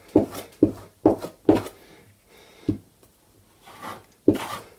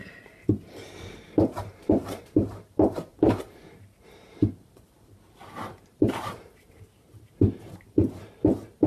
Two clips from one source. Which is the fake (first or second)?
second